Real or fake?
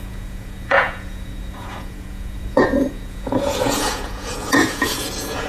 fake